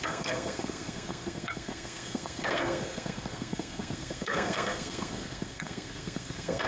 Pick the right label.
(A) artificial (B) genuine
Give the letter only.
A